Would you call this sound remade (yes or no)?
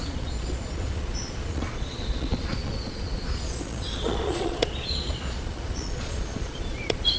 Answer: yes